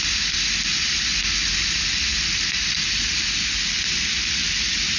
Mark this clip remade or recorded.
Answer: recorded